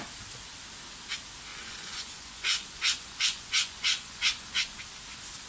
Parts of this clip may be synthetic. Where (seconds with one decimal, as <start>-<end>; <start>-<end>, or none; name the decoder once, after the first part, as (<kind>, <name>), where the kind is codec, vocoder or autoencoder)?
1.5-4.8 (vocoder, Vocos)